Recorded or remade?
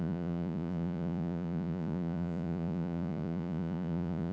remade